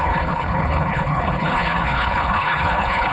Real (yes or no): no